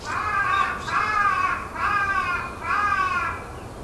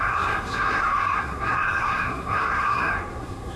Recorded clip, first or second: first